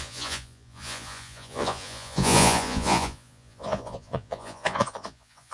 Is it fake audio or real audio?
fake